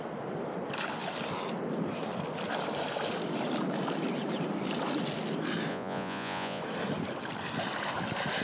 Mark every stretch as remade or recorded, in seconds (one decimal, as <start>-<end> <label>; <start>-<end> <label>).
0.0-5.7 recorded; 5.7-6.6 remade; 6.6-8.4 recorded